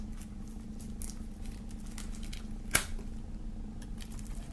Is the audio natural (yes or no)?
yes